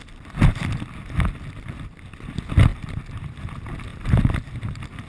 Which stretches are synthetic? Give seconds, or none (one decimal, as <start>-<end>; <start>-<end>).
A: none